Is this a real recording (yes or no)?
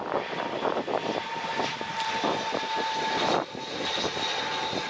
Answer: yes